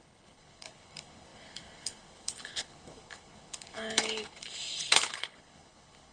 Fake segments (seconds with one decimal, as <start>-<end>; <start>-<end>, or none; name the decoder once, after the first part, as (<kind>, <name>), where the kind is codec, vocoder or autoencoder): 0.0-6.1 (codec, HILCodec)